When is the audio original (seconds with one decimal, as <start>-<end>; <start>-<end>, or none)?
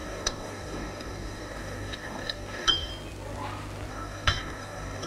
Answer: 2.9-3.9